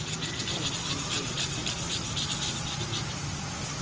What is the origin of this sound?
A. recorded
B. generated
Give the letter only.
A